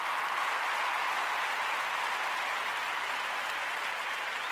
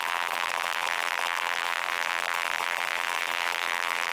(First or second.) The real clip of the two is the first